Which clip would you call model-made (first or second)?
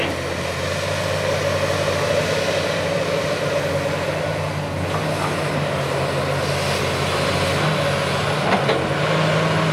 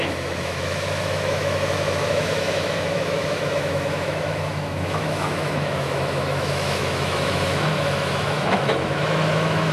second